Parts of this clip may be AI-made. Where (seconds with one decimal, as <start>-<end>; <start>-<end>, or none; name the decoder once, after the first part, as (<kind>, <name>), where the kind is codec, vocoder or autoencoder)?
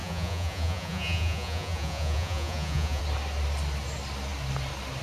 0.0-3.0 (vocoder, Vocos)